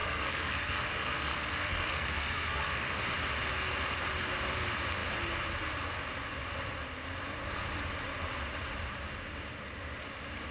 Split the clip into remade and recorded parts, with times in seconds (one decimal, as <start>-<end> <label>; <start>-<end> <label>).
0.0-3.0 remade; 3.0-10.5 recorded